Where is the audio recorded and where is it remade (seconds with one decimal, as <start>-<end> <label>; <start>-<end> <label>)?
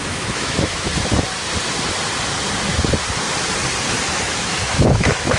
0.0-0.9 remade; 0.9-4.1 recorded; 4.1-5.4 remade